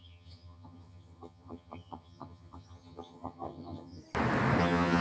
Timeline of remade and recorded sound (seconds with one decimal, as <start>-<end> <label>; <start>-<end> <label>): 0.0-4.0 remade; 4.0-4.6 recorded; 4.6-5.0 remade